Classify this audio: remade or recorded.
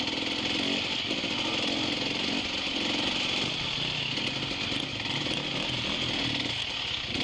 recorded